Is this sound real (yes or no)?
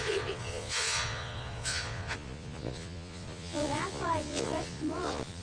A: no